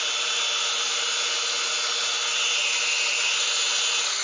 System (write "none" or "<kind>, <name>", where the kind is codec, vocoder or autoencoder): none